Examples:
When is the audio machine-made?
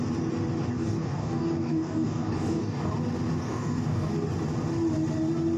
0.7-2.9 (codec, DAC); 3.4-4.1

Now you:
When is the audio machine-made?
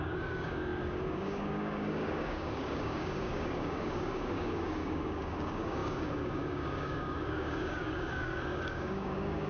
0.0-9.5 (codec, DAC)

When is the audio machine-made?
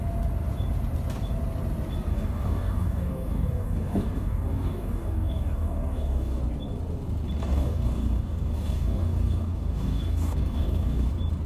2.1-6.4 (codec, DAC); 7.4-11.1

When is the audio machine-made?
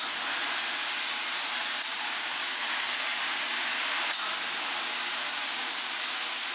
1.9-3.7 (codec, DAC); 5.1-5.9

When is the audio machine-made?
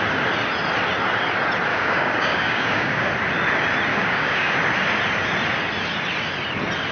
1.7-3.1 (codec, DAC); 3.9-4.5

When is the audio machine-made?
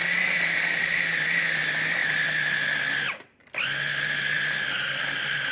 none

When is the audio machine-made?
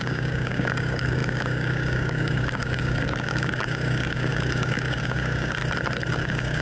0.0-5.6 (codec, DAC); 6.1-6.6